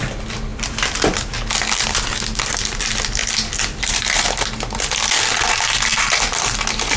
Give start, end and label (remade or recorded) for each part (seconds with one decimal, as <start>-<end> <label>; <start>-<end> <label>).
0.0-0.5 recorded; 0.5-1.3 remade; 1.3-3.2 recorded; 3.2-4.2 remade; 4.2-7.0 recorded